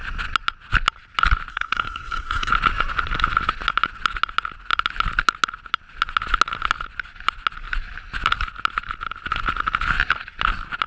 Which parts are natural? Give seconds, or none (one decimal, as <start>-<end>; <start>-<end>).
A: 0.0-1.5; 2.5-10.9